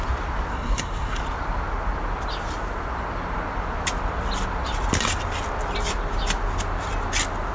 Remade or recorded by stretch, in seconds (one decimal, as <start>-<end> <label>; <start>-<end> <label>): 0.0-0.5 recorded; 0.5-1.2 remade; 1.2-7.5 recorded